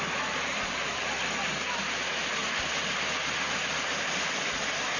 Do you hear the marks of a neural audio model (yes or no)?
no